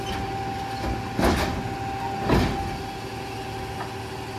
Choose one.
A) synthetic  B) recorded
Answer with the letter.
B